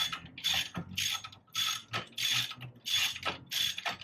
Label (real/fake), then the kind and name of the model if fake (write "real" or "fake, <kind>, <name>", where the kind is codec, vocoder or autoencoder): real